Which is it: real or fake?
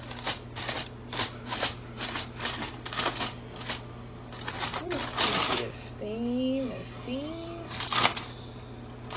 real